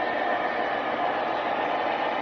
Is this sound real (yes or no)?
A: yes